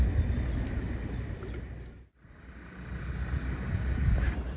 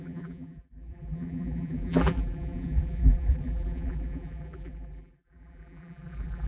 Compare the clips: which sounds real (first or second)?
first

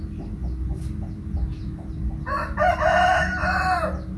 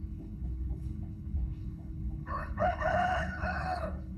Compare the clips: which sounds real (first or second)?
first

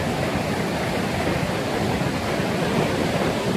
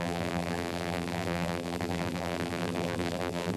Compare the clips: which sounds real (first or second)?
first